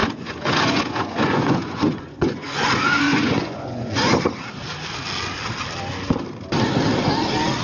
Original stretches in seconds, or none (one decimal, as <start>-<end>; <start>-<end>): 4.1-7.6